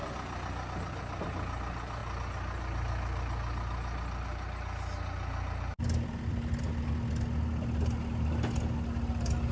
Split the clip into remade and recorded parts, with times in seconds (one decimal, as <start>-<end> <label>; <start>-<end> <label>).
0.0-9.5 recorded